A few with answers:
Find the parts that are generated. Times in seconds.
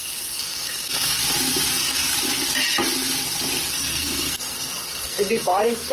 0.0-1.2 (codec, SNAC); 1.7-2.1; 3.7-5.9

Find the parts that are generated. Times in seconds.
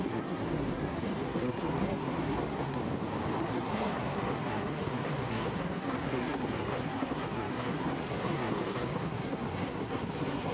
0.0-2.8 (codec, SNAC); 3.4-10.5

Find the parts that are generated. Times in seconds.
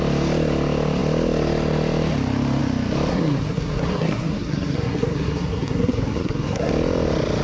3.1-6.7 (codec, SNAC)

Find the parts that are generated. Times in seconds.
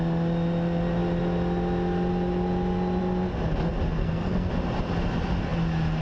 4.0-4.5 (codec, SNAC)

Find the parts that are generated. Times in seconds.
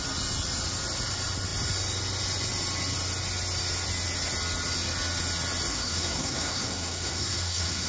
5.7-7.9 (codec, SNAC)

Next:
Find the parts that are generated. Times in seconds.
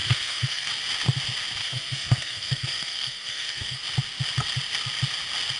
0.0-0.7 (codec, SNAC); 1.6-3.8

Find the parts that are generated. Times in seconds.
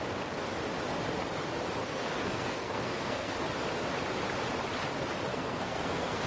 1.8-3.4 (codec, SNAC); 5.3-6.3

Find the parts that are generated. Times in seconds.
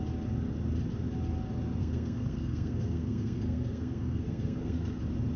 1.8-5.0 (codec, SNAC)